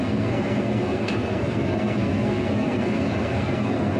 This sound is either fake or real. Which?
fake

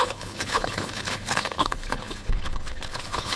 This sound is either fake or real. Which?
fake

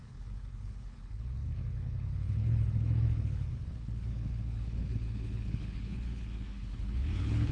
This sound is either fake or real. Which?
fake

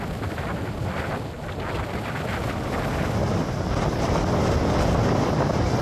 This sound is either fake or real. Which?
real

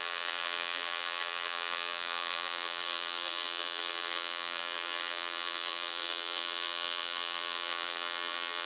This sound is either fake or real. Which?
fake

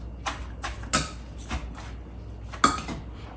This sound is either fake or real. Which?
real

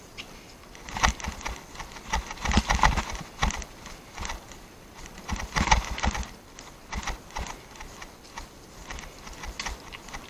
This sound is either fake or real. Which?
real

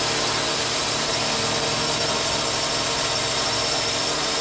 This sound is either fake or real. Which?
real